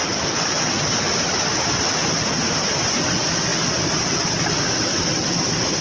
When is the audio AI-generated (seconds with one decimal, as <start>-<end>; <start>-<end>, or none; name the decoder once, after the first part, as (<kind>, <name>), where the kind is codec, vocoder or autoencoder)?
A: none